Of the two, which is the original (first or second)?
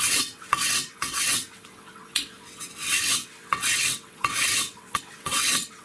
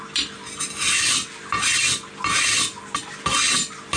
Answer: second